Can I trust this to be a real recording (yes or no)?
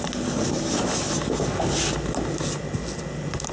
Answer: yes